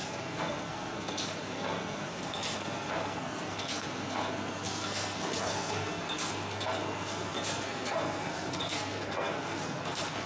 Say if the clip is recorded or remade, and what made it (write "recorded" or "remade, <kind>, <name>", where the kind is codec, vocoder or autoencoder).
remade, codec, SNAC